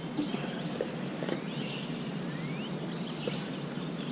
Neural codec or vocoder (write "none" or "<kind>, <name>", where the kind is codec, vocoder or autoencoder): none